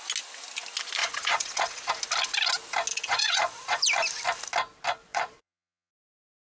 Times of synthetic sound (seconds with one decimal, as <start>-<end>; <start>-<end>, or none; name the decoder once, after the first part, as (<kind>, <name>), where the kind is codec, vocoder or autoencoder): 1.0-1.9 (vocoder, Vocos); 2.9-3.8; 5.1-5.9